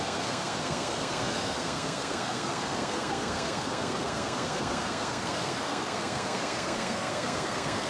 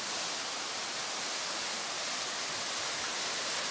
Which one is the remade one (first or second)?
first